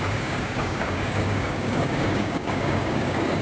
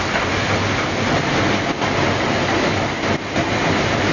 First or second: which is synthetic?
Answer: first